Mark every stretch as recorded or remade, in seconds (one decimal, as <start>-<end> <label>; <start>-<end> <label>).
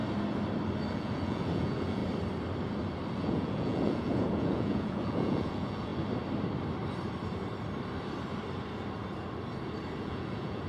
0.0-0.9 recorded; 0.9-2.0 remade; 2.0-3.2 recorded; 3.2-5.9 remade; 5.9-10.0 recorded; 10.0-10.7 remade